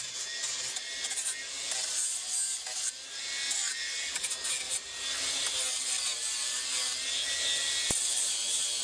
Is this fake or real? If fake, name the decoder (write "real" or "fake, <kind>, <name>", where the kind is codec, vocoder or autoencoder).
real